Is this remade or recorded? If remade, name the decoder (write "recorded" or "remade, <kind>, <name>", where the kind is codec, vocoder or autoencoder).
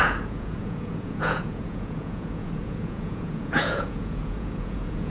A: remade, vocoder, Vocos